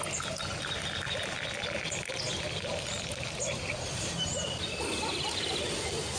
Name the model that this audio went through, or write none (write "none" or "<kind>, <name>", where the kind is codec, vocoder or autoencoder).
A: none